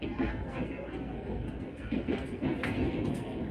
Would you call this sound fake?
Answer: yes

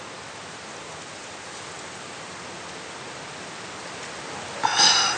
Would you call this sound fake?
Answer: no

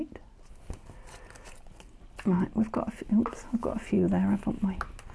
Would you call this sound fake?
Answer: no